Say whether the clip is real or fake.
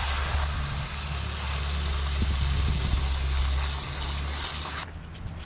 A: real